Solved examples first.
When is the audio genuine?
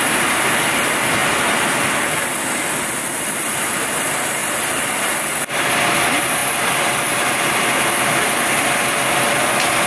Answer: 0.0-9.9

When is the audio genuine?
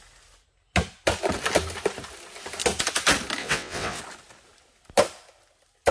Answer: 0.0-3.4; 4.0-5.9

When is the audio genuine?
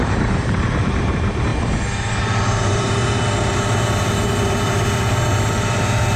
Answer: none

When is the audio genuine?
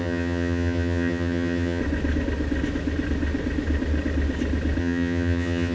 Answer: 1.8-4.8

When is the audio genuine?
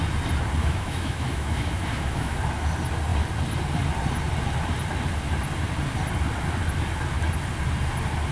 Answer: 0.0-0.6; 2.4-8.3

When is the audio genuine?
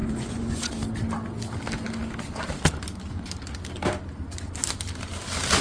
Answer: 0.7-5.6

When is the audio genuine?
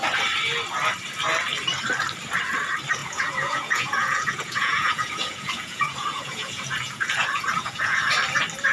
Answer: 0.0-3.0; 8.1-8.7